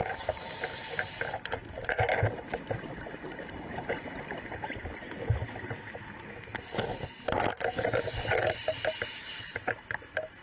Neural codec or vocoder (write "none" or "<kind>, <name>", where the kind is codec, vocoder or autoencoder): none